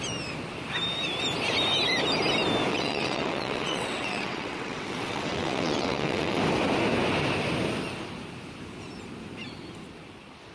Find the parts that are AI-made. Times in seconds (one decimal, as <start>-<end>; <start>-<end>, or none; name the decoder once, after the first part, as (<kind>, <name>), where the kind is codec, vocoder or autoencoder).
2.7-6.4 (vocoder, WaveNeXt)